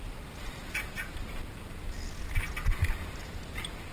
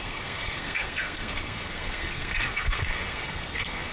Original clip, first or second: first